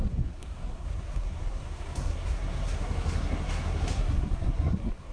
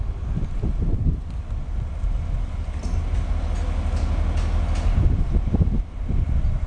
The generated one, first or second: first